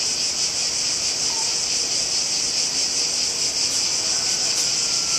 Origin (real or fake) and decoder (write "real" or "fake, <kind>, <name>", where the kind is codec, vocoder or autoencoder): real